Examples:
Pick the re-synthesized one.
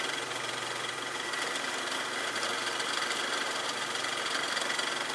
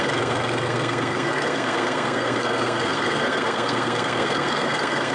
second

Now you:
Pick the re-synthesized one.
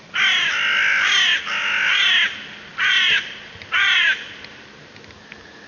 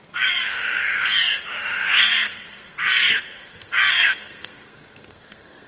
second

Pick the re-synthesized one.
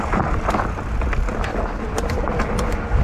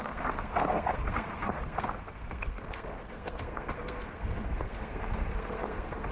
second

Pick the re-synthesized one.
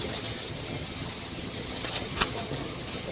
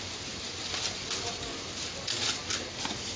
first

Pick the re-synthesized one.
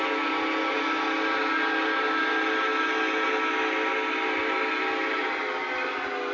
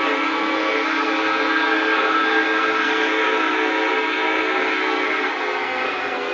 second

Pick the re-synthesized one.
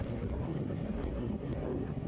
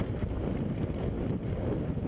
first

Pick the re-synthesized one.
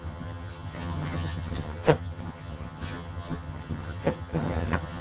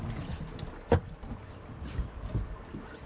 first